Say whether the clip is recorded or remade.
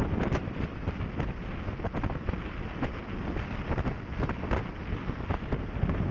recorded